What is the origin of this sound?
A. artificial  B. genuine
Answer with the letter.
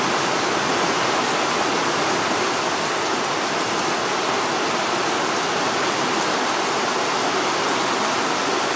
B